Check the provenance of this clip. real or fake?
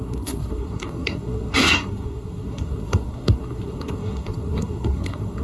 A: fake